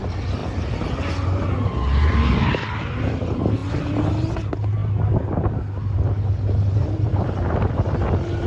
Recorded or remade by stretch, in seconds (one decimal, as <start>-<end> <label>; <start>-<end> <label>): 0.0-8.5 recorded

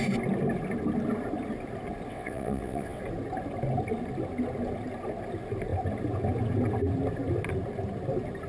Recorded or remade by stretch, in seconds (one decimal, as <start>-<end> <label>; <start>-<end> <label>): 0.0-2.1 recorded; 2.1-3.0 remade; 3.0-8.5 recorded